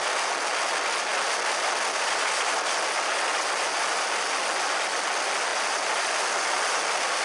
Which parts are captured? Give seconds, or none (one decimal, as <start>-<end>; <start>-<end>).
0.0-7.2